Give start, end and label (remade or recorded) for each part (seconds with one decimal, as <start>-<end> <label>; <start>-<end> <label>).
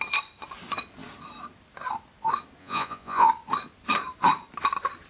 0.0-2.6 recorded; 2.6-3.3 remade; 3.3-5.1 recorded